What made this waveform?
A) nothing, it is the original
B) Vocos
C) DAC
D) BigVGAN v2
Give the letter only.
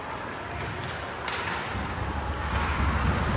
A